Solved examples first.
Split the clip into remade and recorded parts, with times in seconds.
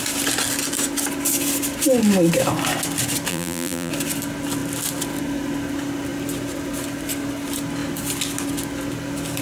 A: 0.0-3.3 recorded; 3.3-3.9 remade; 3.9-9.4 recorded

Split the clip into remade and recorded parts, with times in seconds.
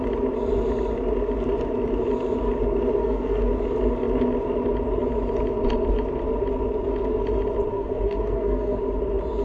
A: 0.0-3.0 recorded; 3.0-3.5 remade; 3.5-7.7 recorded; 7.7-8.8 remade; 8.8-9.4 recorded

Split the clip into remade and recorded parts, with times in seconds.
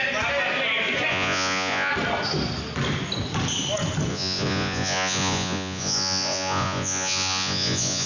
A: 0.0-1.1 recorded; 1.1-1.9 remade; 1.9-4.1 recorded; 4.1-8.1 remade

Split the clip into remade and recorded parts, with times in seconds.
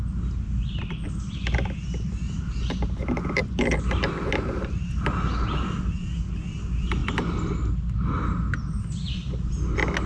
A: 0.0-10.1 recorded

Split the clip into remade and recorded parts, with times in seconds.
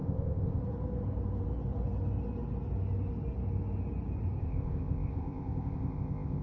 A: 0.0-0.6 remade; 0.6-4.4 recorded; 4.4-6.4 remade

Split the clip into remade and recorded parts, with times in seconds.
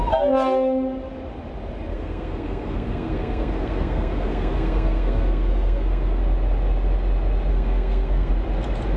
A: 0.0-1.9 recorded; 1.9-6.2 remade; 6.2-7.5 recorded; 7.5-8.3 remade; 8.3-9.0 recorded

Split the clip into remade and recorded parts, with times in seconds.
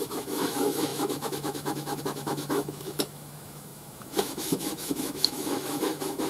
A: 0.0-6.3 remade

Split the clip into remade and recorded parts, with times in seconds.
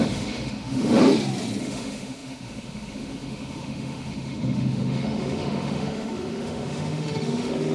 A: 0.0-1.0 remade; 1.0-1.6 recorded; 1.6-7.7 remade